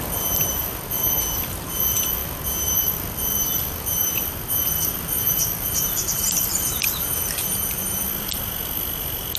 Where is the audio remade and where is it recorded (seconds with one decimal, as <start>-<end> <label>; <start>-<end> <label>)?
0.0-9.4 remade